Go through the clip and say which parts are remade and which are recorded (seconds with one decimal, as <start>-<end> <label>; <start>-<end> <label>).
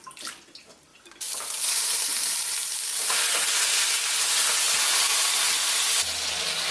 0.0-6.7 recorded